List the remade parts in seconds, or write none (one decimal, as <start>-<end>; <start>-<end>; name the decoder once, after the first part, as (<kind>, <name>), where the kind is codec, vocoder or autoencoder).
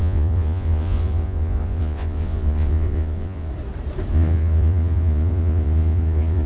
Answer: 0.0-3.5 (vocoder, Vocos); 4.1-6.5